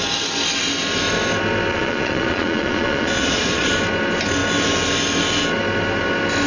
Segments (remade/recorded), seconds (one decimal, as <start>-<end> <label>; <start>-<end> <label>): 0.0-1.7 recorded; 1.7-3.8 remade; 3.8-6.5 recorded